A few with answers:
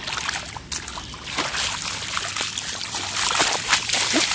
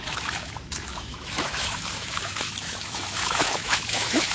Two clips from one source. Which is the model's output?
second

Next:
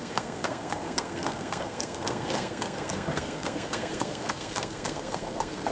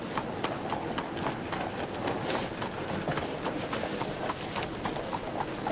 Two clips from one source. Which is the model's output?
first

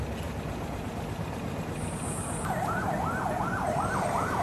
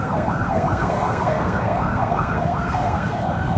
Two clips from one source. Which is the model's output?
second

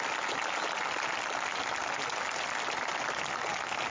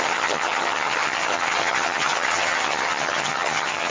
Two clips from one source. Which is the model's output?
second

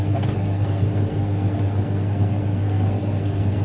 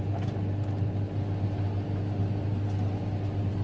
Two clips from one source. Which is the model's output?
first